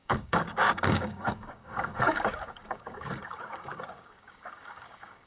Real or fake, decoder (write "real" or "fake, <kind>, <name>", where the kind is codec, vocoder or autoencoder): fake, codec, DAC